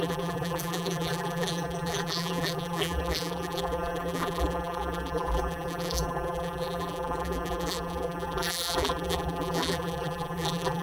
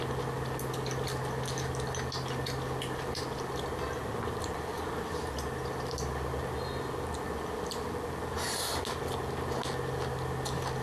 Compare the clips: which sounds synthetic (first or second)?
first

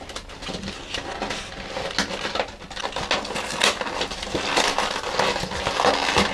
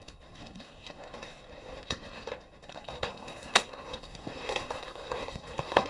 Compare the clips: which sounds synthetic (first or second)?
second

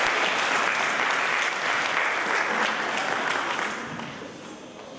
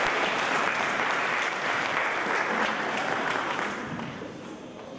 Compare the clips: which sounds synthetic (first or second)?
second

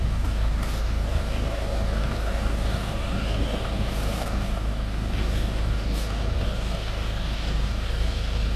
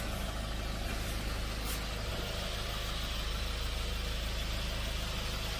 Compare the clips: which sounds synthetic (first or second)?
first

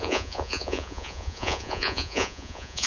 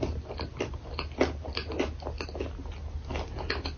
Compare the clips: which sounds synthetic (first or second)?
first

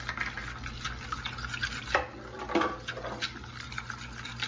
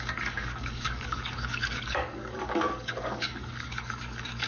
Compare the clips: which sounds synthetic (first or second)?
second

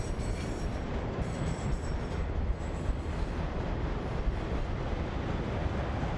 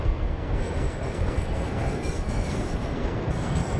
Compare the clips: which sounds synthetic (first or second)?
second